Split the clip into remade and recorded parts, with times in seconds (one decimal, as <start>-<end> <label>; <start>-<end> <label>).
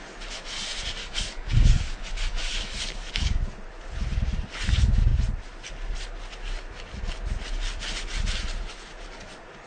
0.0-1.0 recorded; 1.0-3.4 remade; 3.4-9.7 recorded